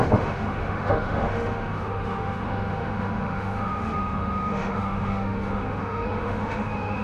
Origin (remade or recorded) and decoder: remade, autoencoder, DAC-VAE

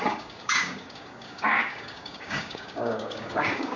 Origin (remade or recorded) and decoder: remade, codec, DAC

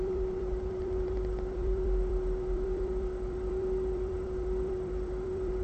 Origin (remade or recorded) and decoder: remade, vocoder, BigVGAN v2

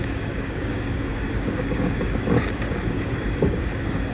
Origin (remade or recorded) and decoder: remade, codec, DAC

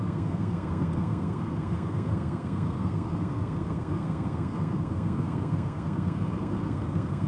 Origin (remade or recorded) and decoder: remade, codec, SNAC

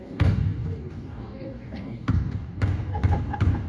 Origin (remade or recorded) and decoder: remade, codec, DAC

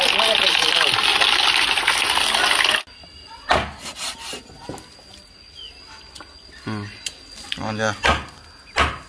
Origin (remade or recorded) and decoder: recorded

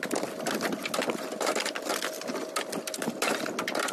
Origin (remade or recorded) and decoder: recorded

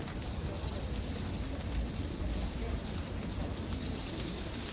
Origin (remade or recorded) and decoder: remade, vocoder, BigVGAN v2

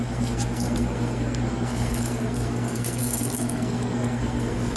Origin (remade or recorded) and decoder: remade, codec, SNAC